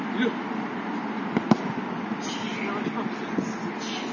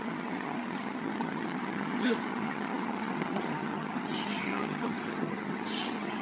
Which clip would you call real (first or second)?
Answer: first